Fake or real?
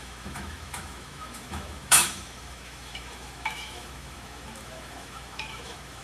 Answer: fake